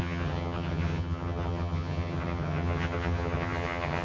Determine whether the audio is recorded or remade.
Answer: remade